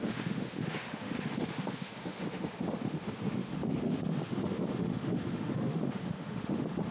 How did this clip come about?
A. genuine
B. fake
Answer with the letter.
B